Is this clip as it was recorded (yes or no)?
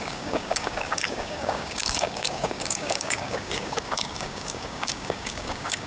no